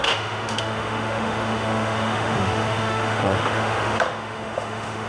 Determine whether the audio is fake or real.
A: fake